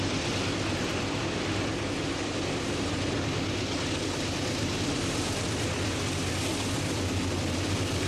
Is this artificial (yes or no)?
no